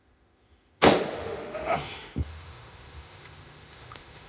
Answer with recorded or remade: remade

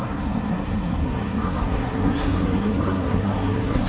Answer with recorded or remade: remade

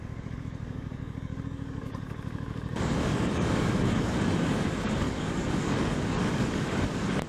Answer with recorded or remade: remade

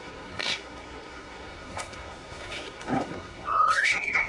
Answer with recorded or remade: remade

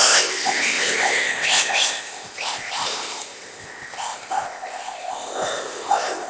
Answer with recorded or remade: remade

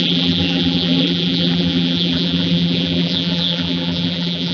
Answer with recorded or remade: remade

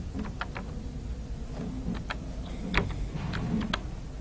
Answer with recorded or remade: recorded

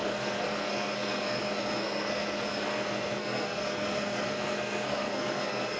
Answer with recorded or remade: remade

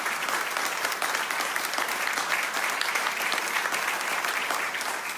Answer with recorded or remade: recorded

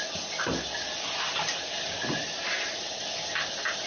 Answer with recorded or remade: recorded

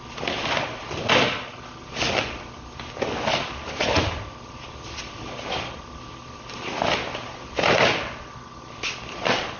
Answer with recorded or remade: recorded